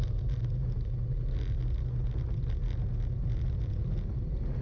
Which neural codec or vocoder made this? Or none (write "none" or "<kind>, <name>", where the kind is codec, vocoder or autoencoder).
none